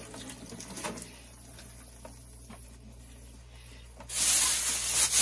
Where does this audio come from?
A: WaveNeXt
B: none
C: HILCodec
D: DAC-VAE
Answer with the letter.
B